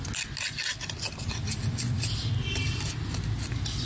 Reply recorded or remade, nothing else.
recorded